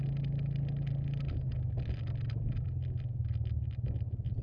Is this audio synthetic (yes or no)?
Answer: no